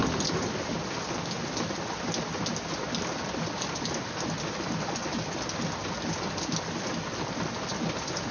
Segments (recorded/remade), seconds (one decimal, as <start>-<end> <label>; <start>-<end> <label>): 0.0-8.3 recorded